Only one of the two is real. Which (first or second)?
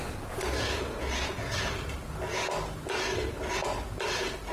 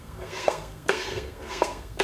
first